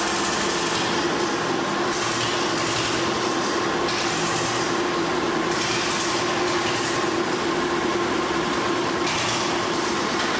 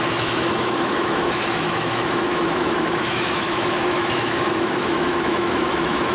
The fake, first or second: second